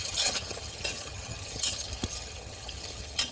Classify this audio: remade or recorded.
remade